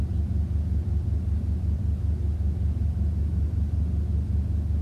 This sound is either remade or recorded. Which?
recorded